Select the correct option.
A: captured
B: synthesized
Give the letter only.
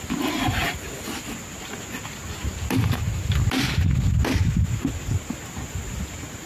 A